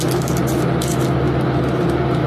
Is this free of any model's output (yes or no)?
yes